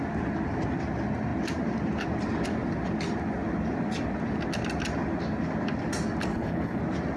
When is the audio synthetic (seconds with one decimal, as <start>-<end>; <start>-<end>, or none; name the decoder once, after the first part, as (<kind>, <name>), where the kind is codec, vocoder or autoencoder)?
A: 6.3-6.8 (codec, HILCodec)